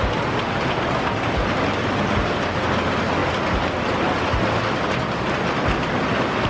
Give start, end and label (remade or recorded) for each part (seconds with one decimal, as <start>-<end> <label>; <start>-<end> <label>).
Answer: 0.0-3.2 remade; 3.2-6.1 recorded; 6.1-6.5 remade